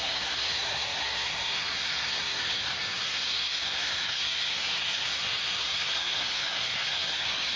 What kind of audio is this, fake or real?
fake